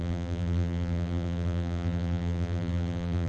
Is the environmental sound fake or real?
fake